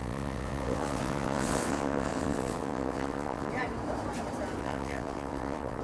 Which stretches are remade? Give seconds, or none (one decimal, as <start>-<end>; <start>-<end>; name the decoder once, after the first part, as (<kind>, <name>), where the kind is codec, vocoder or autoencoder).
0.0-3.5 (vocoder, WaveNeXt); 4.6-5.8